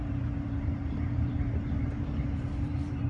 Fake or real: fake